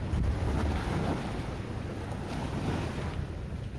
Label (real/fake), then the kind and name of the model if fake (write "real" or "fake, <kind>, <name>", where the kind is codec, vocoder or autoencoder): real